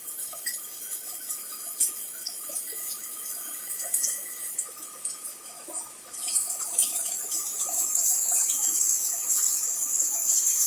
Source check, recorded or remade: remade